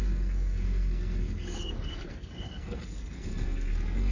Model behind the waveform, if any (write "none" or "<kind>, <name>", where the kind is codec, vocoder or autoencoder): codec, SNAC